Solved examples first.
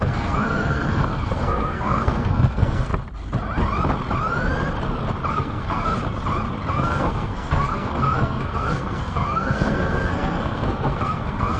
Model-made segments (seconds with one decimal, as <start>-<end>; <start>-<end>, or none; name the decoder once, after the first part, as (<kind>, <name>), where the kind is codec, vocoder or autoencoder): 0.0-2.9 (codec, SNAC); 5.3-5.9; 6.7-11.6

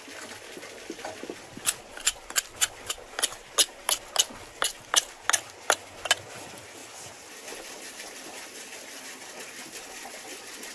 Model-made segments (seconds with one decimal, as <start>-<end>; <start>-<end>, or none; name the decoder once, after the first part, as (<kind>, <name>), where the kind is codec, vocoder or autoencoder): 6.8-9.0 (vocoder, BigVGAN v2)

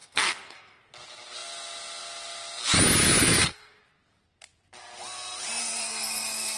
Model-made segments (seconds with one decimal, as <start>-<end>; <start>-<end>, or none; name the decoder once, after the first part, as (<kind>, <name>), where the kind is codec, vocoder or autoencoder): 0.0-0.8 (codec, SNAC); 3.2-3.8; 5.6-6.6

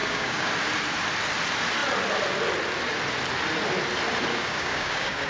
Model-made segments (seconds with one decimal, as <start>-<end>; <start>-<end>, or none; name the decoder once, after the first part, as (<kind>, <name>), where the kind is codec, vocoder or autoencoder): 0.0-0.5 (codec, DAC); 4.3-5.3

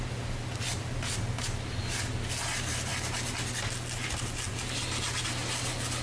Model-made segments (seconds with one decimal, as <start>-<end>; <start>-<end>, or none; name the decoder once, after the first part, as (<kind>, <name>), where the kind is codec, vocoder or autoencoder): none